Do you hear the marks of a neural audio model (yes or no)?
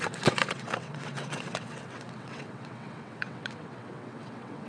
yes